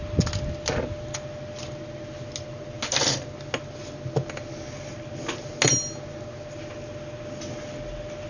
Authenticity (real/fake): real